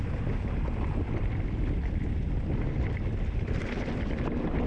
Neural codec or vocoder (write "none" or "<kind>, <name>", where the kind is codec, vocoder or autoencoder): none